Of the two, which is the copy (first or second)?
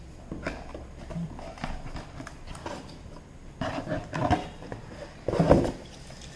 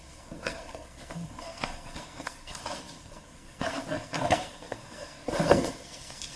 second